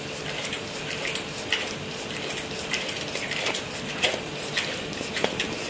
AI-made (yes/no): no